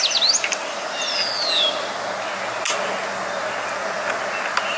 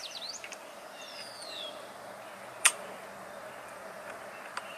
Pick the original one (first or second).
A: first